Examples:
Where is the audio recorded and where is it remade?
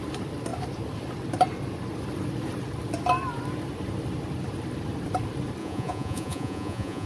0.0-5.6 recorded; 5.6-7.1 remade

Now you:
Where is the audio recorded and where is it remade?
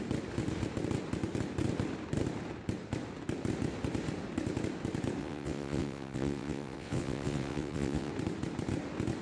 0.0-5.2 recorded; 5.2-8.1 remade; 8.1-9.2 recorded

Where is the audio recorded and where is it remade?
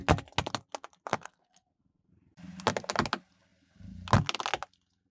0.0-1.1 recorded; 1.1-2.1 remade; 2.1-5.1 recorded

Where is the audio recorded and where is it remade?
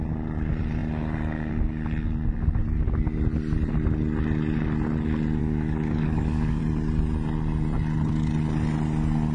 0.0-5.4 recorded; 5.4-6.6 remade; 6.6-9.3 recorded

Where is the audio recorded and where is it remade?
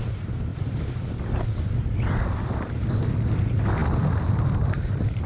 0.0-0.5 recorded; 0.5-1.4 remade; 1.4-3.8 recorded; 3.8-5.3 remade